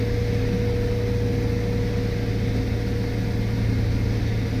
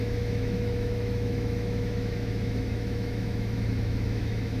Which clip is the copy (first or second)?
second